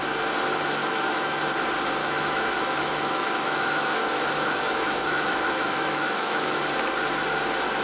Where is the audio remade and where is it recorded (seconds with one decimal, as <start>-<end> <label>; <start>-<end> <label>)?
0.0-0.8 recorded; 0.8-1.4 remade; 1.4-2.0 recorded; 2.0-6.6 remade; 6.6-7.8 recorded